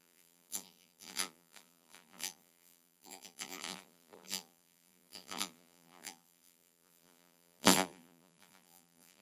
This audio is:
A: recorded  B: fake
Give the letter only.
B